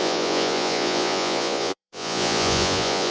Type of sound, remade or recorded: remade